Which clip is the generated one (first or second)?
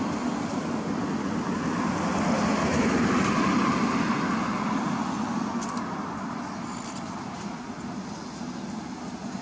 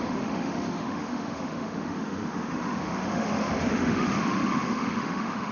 second